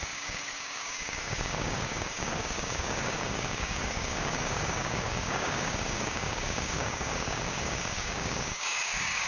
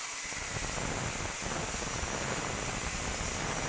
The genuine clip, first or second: second